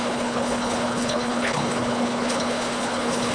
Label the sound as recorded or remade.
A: remade